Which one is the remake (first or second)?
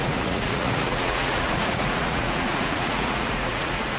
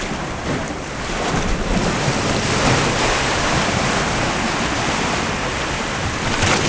first